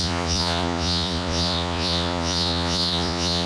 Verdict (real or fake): fake